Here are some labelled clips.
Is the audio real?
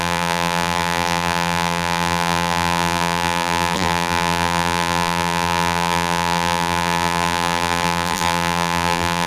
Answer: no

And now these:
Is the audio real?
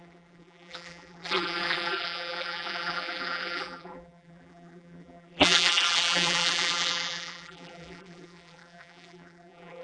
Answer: no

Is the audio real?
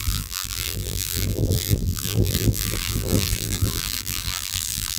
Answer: no